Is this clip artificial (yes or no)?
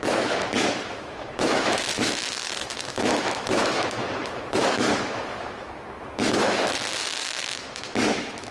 yes